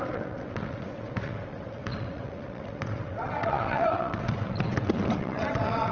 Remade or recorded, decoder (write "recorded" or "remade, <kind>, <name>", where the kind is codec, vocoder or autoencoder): remade, vocoder, WaveNeXt